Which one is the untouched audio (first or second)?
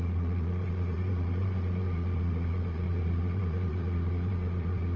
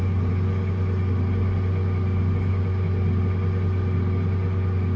second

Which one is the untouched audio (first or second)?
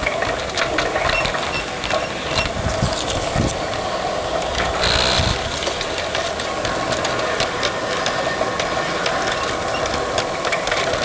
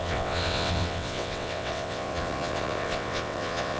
first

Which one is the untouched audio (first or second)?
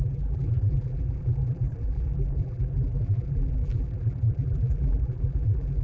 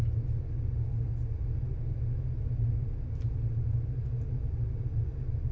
second